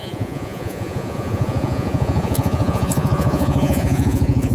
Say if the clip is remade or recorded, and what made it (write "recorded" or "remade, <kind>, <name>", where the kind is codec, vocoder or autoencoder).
remade, vocoder, Vocos